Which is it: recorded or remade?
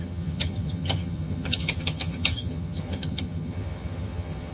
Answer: remade